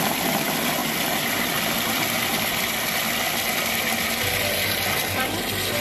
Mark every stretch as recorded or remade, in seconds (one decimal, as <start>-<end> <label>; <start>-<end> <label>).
0.0-5.8 recorded